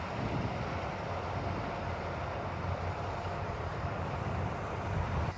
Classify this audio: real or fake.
fake